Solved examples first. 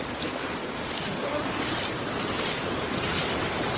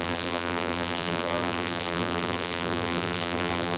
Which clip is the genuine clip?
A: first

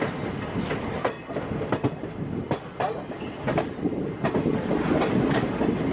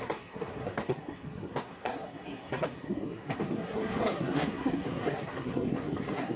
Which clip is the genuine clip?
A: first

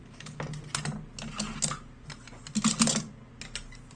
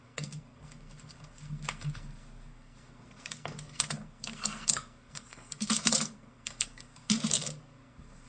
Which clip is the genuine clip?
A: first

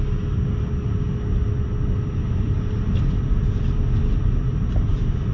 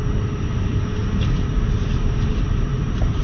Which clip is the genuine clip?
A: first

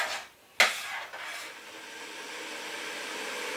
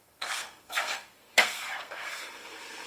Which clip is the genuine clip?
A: first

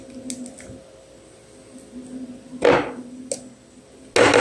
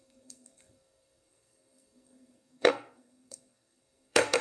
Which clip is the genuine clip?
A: first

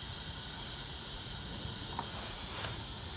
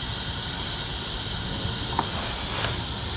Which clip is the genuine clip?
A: second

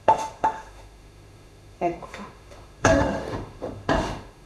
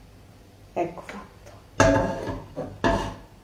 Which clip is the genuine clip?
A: second